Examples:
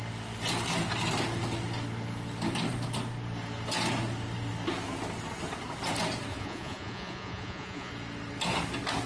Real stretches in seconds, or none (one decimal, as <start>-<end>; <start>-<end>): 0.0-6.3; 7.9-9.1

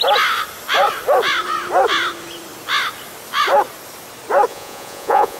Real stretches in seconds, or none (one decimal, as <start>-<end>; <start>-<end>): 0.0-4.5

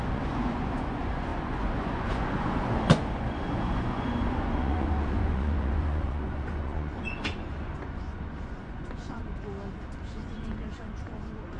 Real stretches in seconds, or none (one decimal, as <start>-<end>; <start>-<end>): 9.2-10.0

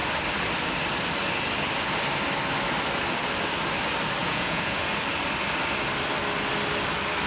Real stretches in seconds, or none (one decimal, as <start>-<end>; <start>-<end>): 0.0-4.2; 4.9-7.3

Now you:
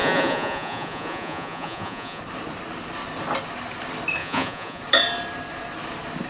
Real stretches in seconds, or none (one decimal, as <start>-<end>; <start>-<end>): 2.2-4.2; 4.8-6.3